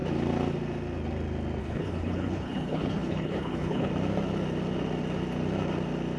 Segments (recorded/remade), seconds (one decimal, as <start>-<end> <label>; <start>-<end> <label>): 0.0-1.6 recorded; 1.6-3.9 remade; 3.9-6.2 recorded